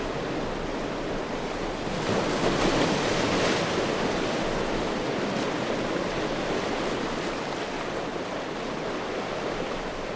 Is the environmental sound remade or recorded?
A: recorded